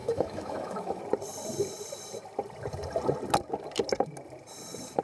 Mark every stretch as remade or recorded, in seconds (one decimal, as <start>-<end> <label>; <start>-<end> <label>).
0.0-1.0 remade; 1.0-5.0 recorded